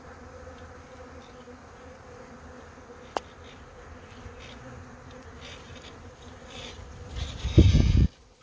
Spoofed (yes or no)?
no